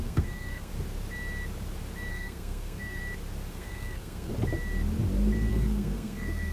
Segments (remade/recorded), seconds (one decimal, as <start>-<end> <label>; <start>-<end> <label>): 0.0-0.7 remade; 0.7-2.1 recorded; 2.1-3.0 remade; 3.0-3.5 recorded; 3.5-4.3 remade; 4.3-5.5 recorded; 5.5-6.5 remade